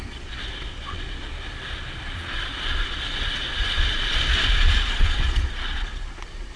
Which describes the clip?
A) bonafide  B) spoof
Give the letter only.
B